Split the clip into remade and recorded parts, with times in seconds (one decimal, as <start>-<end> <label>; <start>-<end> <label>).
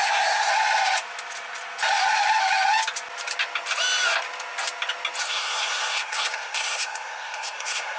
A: 0.0-0.5 remade; 0.5-5.2 recorded; 5.2-8.0 remade